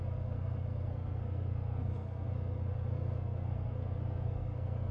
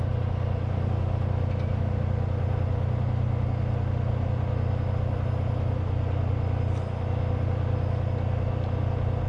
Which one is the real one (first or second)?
second